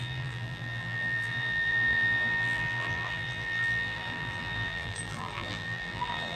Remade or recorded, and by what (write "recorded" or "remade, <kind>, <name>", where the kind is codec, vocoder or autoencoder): remade, vocoder, BigVGAN v2